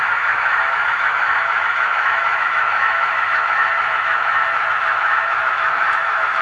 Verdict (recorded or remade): remade